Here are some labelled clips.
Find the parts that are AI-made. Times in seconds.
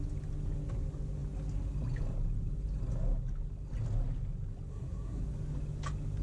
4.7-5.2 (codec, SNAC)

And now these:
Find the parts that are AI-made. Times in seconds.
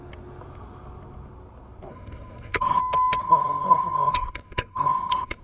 1.9-2.8 (codec, SNAC); 3.2-5.4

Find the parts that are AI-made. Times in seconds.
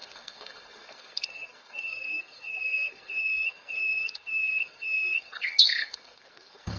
0.0-6.8 (codec, SNAC)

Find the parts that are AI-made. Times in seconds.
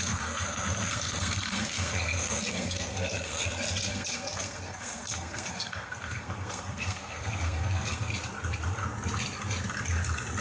0.0-3.4 (codec, SNAC); 3.9-8.1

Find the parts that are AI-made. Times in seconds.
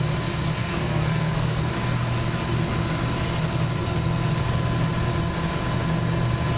0.6-1.7 (codec, SNAC)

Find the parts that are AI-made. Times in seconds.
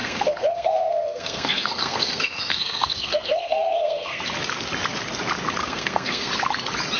0.0-4.2 (codec, SNAC); 5.6-6.3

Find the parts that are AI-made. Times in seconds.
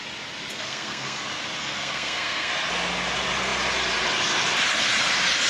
0.5-1.2 (codec, SNAC); 1.6-2.5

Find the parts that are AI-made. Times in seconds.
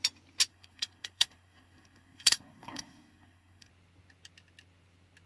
0.5-3.7 (codec, SNAC)